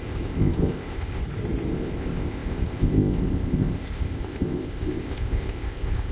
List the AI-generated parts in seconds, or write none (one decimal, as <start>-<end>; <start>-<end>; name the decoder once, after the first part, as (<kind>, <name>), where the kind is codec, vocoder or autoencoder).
0.0-1.2 (codec, ZipCodec); 1.7-6.1